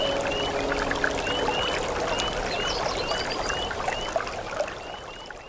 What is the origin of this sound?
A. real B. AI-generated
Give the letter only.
A